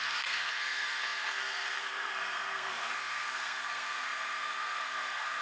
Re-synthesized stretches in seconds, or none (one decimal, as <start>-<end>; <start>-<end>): 0.0-5.4